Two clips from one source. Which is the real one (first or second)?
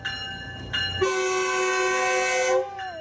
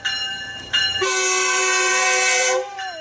first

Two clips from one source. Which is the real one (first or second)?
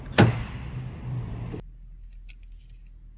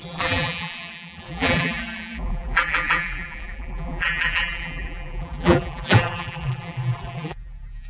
first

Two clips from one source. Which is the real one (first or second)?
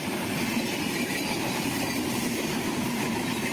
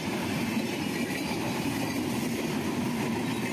second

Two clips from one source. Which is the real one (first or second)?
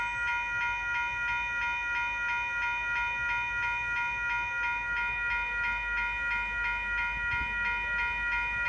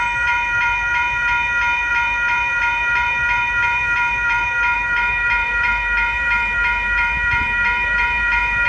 first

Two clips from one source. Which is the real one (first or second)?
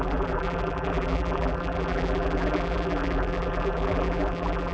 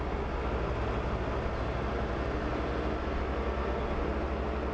second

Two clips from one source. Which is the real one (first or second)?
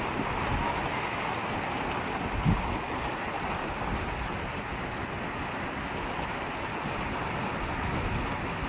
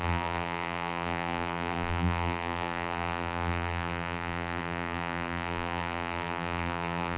first